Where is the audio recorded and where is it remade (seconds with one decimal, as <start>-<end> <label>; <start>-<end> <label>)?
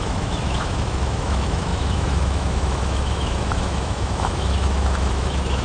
0.0-5.6 remade